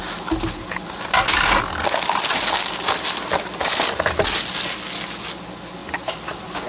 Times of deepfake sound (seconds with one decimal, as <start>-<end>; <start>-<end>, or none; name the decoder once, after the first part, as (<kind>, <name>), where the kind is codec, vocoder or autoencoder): none